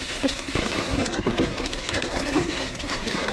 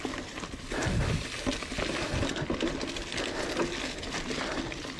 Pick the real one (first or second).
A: second